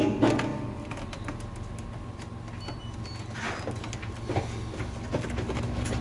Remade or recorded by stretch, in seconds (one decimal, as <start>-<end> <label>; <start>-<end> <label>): 0.0-5.1 recorded; 5.1-6.0 remade